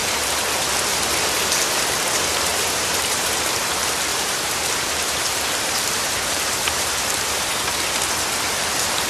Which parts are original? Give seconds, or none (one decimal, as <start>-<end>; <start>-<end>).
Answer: 0.0-2.5; 3.3-4.1; 7.6-9.1